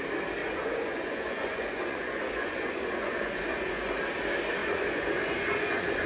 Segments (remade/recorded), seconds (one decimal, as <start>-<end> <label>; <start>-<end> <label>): 0.0-0.4 recorded; 0.4-4.0 remade; 4.0-4.6 recorded; 4.6-6.1 remade